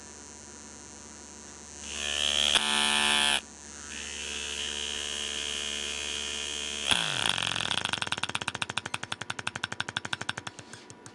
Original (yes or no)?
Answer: yes